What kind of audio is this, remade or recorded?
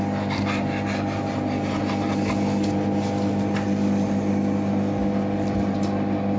recorded